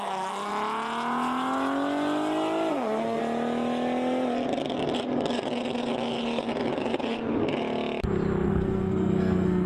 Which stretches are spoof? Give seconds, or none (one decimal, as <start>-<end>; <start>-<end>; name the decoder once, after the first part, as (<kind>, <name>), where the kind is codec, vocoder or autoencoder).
0.0-0.5 (codec, SNAC); 2.7-3.2; 8.5-9.7